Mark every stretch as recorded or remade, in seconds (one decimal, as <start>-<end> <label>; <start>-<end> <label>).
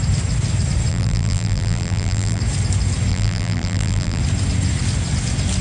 0.0-0.9 recorded; 0.9-2.4 remade; 2.4-3.1 recorded; 3.1-4.2 remade; 4.2-5.6 recorded